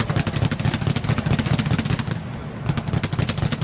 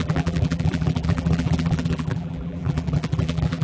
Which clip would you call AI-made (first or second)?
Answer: second